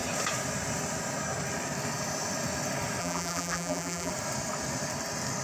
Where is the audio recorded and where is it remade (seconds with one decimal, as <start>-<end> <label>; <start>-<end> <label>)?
0.0-3.0 recorded; 3.0-4.1 remade; 4.1-5.4 recorded